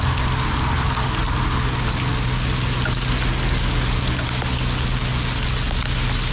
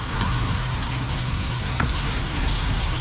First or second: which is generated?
second